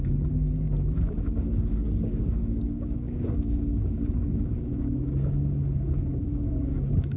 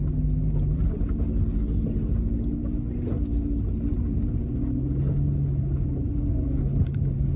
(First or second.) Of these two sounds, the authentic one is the second